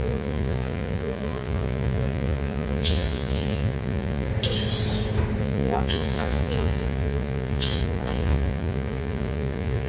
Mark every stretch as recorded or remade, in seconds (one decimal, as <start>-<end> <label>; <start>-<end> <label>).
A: 0.0-4.3 remade; 4.3-5.4 recorded; 5.4-9.9 remade